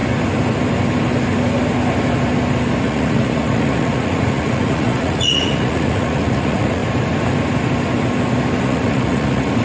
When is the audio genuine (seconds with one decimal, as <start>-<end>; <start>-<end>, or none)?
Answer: 0.0-2.8; 6.8-8.6